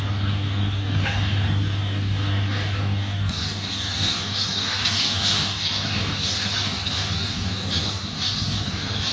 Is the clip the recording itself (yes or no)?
no